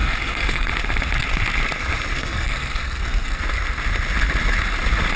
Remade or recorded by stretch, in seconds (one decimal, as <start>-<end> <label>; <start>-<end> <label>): 0.0-0.7 remade; 0.7-2.2 recorded; 2.2-3.4 remade; 3.4-5.2 recorded